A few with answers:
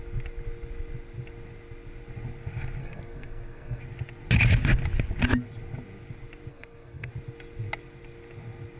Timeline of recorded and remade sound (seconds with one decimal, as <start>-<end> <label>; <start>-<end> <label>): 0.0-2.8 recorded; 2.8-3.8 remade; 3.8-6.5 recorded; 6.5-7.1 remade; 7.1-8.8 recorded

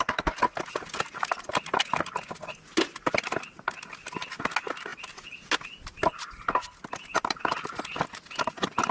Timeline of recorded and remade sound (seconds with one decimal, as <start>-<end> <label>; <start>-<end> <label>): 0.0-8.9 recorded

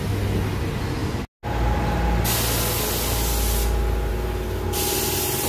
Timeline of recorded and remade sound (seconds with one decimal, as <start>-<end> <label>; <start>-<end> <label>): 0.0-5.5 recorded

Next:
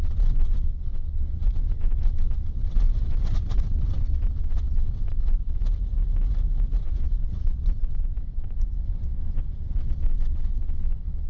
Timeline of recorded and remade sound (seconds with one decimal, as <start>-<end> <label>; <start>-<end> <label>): 0.0-5.6 remade; 5.6-6.8 recorded; 6.8-11.3 remade

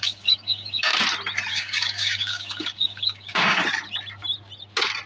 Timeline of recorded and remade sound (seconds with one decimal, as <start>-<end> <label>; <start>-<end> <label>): 0.0-0.9 remade; 0.9-1.5 recorded; 1.5-3.6 remade; 3.6-5.1 recorded

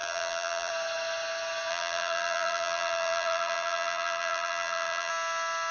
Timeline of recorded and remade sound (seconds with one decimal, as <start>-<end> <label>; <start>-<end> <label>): 0.0-0.7 remade; 0.7-1.7 recorded; 1.7-5.1 remade; 5.1-5.7 recorded

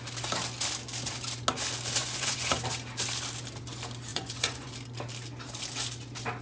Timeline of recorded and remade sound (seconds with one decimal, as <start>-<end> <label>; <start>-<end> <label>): 0.0-2.0 recorded; 2.0-2.6 remade; 2.6-4.1 recorded; 4.1-4.7 remade; 4.7-6.4 recorded

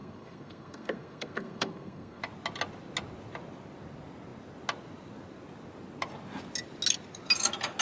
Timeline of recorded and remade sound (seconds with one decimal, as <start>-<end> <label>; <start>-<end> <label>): 0.0-2.2 remade; 2.2-7.8 recorded